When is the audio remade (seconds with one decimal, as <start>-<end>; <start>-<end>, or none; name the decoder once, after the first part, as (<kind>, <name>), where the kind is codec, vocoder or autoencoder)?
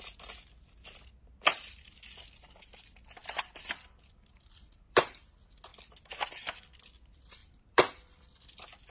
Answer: 3.2-5.3 (vocoder, BigVGAN v2); 7.4-8.5